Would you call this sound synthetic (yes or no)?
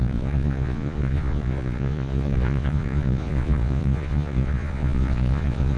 yes